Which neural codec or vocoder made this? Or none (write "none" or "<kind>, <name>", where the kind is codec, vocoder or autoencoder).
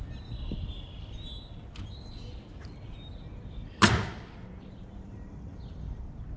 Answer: none